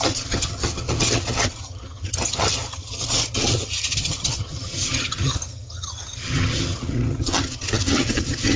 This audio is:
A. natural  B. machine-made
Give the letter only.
B